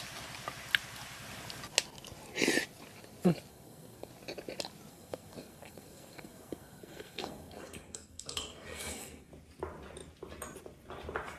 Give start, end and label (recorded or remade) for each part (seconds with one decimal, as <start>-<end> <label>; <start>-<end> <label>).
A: 0.0-3.5 recorded; 3.5-4.1 remade; 4.1-4.9 recorded; 4.9-9.3 remade; 9.3-11.4 recorded